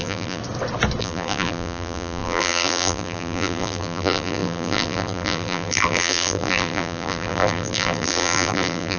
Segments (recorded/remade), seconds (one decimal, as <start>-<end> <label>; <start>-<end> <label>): 0.0-0.4 remade; 0.4-1.0 recorded; 1.0-9.0 remade